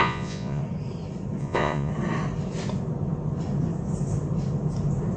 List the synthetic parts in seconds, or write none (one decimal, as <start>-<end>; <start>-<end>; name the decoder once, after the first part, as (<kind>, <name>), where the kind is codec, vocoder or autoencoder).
0.0-0.6 (vocoder, Vocos); 1.4-1.9